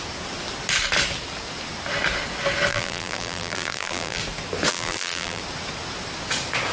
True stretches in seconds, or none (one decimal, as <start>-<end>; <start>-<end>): 0.0-2.7; 4.2-4.7; 5.4-6.7